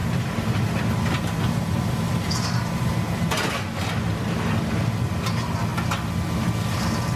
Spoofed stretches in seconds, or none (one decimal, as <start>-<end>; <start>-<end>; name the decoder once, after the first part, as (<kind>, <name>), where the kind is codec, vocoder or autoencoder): 0.0-3.5 (vocoder, BigVGAN v2)